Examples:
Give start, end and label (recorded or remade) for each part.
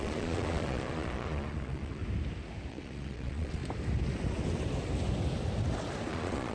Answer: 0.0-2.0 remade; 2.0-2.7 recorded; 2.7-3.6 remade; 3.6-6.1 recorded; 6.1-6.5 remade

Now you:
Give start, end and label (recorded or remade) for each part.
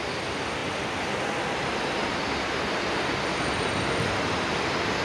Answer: 0.0-5.0 recorded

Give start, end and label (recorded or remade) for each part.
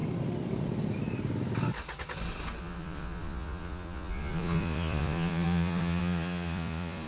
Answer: 0.0-2.6 recorded; 2.6-7.1 remade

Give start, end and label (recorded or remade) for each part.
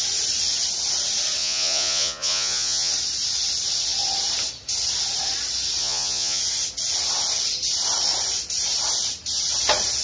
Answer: 0.0-1.4 recorded; 1.4-2.9 remade; 2.9-5.8 recorded; 5.8-6.4 remade; 6.4-10.0 recorded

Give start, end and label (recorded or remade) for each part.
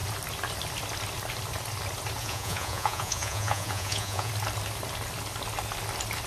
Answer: 0.0-2.2 recorded; 2.2-4.3 remade; 4.3-6.3 recorded